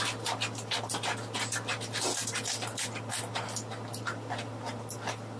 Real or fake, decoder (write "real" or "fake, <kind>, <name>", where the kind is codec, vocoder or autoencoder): fake, vocoder, BigVGAN v2